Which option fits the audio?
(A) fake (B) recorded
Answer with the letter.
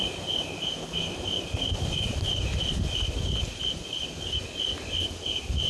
B